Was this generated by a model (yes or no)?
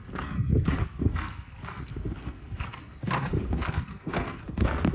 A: yes